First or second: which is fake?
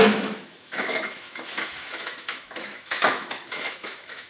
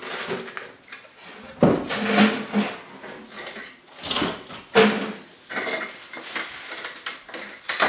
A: first